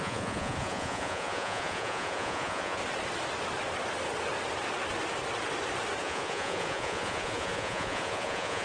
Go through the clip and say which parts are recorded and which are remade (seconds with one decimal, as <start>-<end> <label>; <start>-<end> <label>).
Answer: 0.0-2.8 remade; 2.8-6.0 recorded; 6.0-8.6 remade